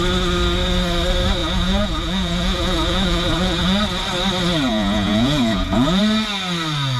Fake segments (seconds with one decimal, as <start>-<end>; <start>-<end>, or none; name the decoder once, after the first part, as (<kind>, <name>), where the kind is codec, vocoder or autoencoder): 1.4-3.8 (vocoder, Vocos); 4.7-6.0